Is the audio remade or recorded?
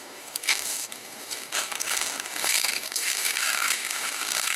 remade